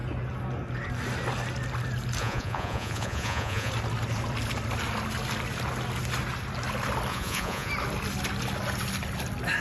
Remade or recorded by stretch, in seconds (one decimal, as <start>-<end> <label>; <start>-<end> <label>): 0.0-2.2 recorded; 2.2-3.7 remade; 3.7-7.1 recorded; 7.1-7.7 remade; 7.7-9.6 recorded